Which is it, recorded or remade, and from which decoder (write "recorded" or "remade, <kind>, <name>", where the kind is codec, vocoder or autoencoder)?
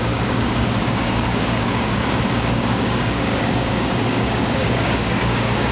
remade, codec, DAC